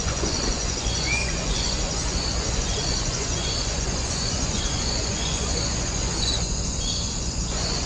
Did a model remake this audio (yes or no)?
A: yes